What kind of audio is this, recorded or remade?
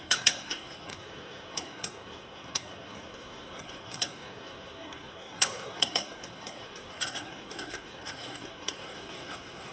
remade